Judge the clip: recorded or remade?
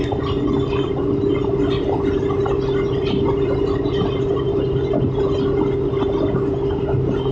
recorded